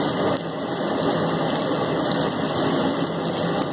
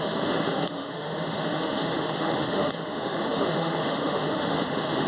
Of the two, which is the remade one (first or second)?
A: second